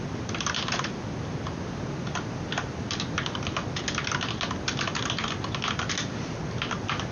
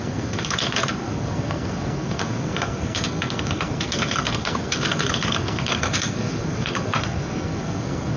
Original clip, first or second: first